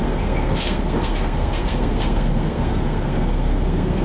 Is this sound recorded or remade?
remade